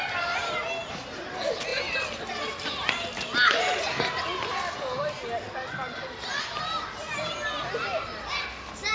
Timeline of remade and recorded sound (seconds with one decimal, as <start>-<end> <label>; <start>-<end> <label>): 0.0-8.9 recorded